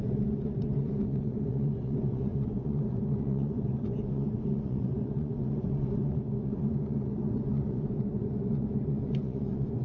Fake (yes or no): yes